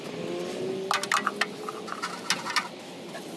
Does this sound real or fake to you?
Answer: real